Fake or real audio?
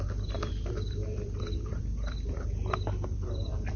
fake